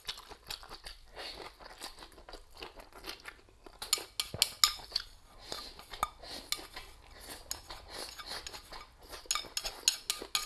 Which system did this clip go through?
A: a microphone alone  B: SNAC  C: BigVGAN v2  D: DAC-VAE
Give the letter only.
A